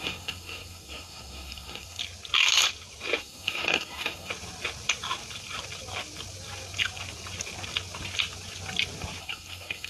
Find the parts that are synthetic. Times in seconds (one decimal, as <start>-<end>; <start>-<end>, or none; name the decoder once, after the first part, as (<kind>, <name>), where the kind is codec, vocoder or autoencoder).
0.0-2.0 (codec, SNAC); 3.2-4.3; 9.2-9.9